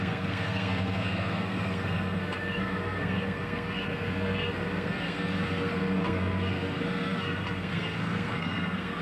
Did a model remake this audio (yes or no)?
yes